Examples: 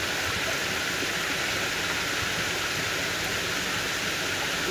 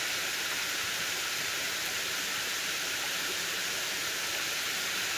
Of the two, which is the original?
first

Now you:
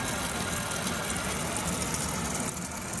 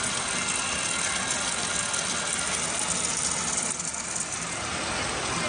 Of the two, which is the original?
second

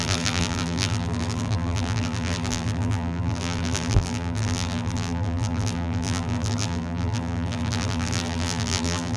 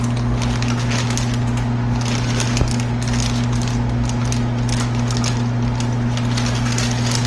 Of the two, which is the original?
second